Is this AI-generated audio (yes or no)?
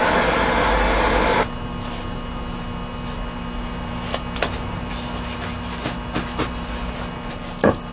no